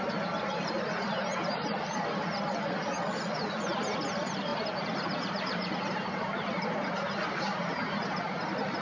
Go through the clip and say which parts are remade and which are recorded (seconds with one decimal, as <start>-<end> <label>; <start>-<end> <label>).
0.0-4.5 recorded; 4.5-8.2 remade; 8.2-8.8 recorded